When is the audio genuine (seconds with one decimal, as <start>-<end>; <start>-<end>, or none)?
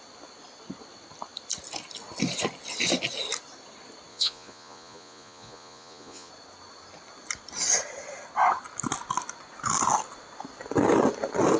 0.0-4.1; 6.3-11.6